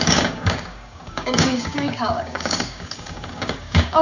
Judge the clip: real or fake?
fake